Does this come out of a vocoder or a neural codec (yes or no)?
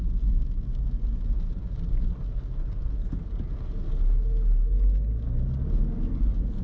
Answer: no